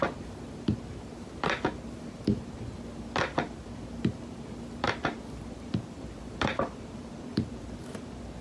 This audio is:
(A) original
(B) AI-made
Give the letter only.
B